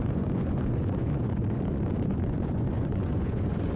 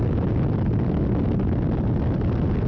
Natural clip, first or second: second